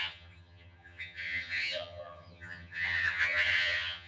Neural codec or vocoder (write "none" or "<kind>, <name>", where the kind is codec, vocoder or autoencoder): vocoder, HiFi-GAN